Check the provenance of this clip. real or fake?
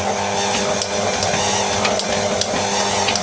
real